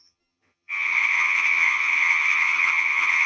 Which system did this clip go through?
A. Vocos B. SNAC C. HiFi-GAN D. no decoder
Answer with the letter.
C